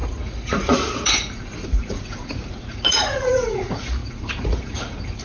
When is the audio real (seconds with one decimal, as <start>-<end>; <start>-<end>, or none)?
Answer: none